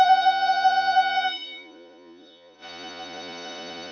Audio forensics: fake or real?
fake